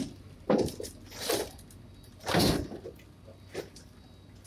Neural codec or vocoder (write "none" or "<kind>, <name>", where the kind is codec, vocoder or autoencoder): none